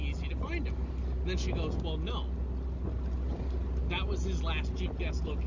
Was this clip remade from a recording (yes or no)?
no